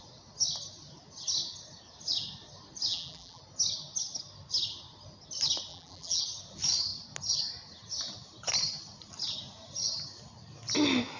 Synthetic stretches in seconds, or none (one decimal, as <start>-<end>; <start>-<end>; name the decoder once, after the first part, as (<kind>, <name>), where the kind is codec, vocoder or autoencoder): 2.9-3.4 (vocoder, BigVGAN v2); 5.7-6.2